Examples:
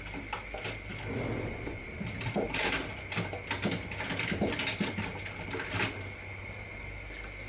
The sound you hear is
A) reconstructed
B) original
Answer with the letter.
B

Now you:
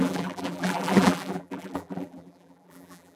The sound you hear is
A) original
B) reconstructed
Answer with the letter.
B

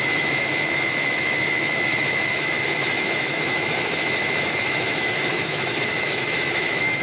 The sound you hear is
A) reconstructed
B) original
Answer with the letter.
A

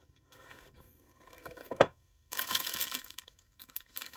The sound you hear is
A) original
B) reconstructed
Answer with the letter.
B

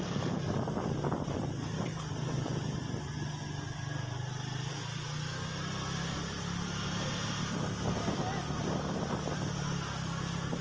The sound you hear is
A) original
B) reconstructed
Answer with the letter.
A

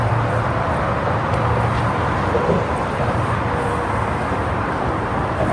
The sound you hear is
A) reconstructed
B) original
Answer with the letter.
A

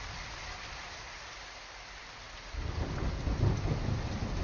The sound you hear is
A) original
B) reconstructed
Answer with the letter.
A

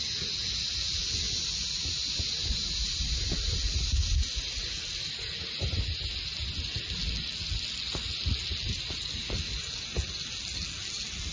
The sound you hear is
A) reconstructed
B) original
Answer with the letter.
B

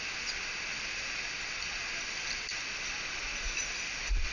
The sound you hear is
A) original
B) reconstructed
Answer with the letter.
A